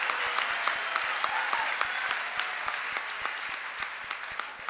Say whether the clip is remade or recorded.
recorded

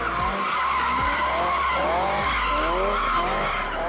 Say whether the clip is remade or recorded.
recorded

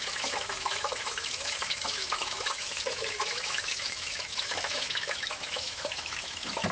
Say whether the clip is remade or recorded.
remade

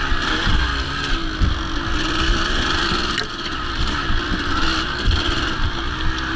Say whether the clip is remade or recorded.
recorded